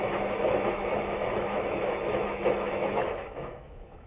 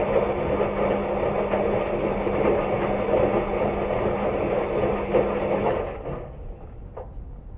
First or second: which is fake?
first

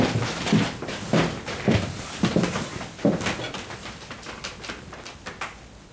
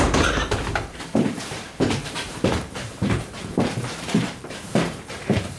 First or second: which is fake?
second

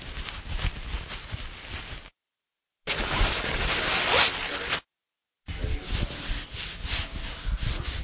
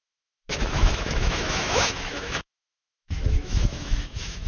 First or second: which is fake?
second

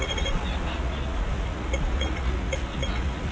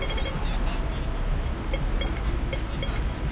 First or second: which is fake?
first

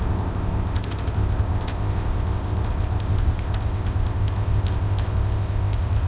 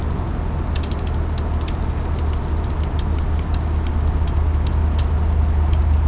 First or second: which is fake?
first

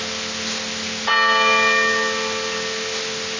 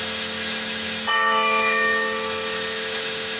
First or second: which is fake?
second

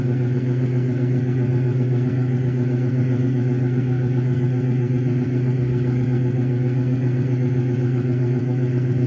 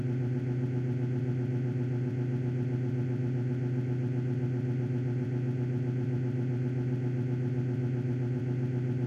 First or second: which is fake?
first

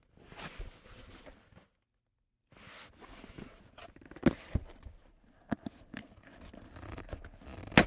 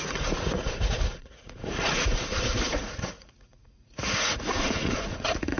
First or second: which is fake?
second